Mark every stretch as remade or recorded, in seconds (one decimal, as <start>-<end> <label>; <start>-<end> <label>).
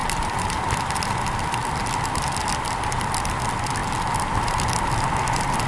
0.0-0.6 remade; 0.6-5.7 recorded